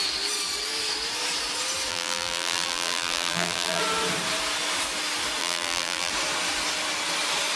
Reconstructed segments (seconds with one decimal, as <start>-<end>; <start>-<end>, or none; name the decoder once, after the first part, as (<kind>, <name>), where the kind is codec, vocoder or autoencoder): 1.9-3.8 (vocoder, BigVGAN v2); 5.4-6.1